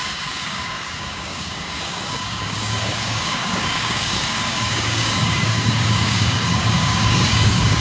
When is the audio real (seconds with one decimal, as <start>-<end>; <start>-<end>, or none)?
none